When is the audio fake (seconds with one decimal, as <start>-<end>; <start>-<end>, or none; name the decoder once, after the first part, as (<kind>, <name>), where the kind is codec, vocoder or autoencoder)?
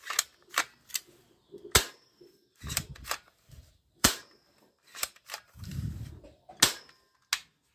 0.4-0.9 (vocoder, BigVGAN v2); 2.5-6.1